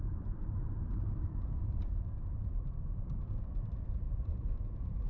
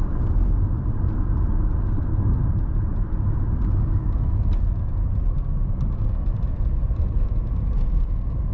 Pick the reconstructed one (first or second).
first